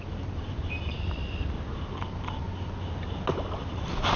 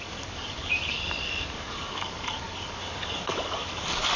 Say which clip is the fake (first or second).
second